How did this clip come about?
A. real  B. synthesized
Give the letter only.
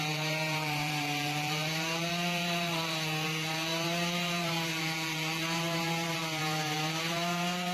B